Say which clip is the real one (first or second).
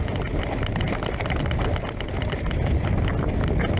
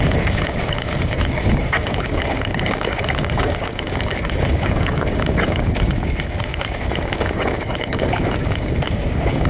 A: first